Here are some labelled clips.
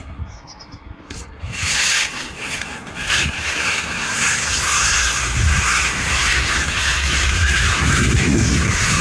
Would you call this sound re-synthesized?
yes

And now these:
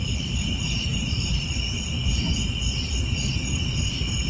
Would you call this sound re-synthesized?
no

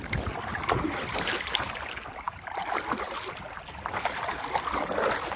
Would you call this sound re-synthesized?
no